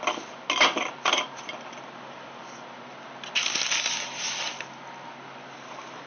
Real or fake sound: real